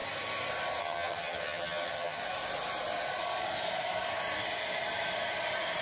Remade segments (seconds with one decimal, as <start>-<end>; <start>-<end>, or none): 0.8-2.2